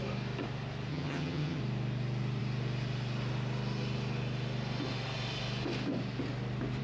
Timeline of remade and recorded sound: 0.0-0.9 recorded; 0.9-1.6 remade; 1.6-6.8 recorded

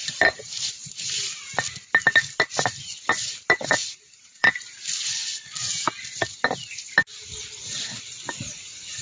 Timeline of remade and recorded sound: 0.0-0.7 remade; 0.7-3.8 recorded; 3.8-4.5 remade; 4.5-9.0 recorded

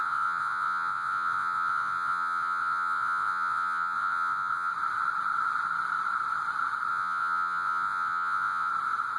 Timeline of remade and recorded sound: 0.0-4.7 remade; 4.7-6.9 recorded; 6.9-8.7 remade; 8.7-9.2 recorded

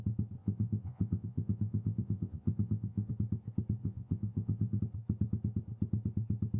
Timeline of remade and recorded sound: 0.0-0.4 recorded; 0.4-3.1 remade; 3.1-3.8 recorded; 3.8-4.8 remade; 4.8-6.6 recorded

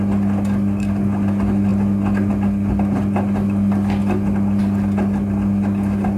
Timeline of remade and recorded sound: 0.0-6.2 recorded

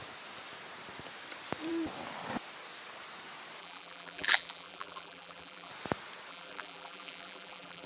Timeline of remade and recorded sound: 0.0-3.6 recorded; 3.6-5.7 remade; 5.7-6.3 recorded; 6.3-7.9 remade

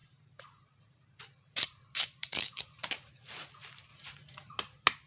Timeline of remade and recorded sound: 0.0-3.1 remade; 3.1-3.9 recorded; 3.9-4.6 remade; 4.6-5.1 recorded